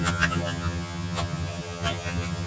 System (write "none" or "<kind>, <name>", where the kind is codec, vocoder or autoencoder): vocoder, HiFi-GAN